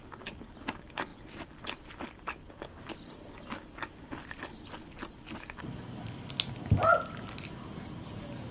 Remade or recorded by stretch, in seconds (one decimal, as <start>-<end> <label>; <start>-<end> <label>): 0.0-8.5 recorded